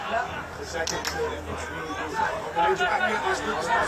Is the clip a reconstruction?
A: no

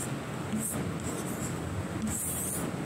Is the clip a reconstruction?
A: no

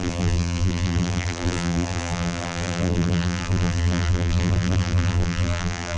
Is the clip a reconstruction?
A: yes